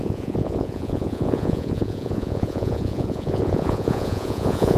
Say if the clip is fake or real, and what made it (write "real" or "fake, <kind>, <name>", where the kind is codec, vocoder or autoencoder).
fake, vocoder, Vocos